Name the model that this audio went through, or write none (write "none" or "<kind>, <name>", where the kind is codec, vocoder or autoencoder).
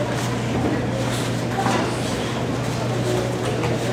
none